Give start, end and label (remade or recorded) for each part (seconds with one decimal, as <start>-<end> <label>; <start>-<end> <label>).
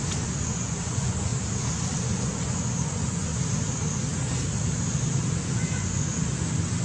0.0-1.3 remade; 1.3-2.0 recorded; 2.0-3.3 remade; 3.3-5.4 recorded; 5.4-6.8 remade